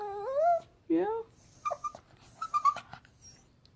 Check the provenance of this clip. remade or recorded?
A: recorded